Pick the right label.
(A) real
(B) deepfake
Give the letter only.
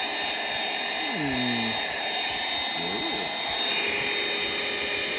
A